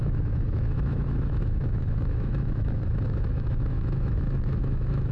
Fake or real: fake